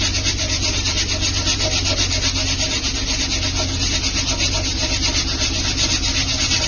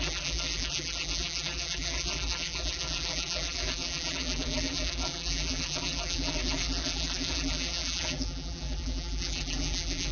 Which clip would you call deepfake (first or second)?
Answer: second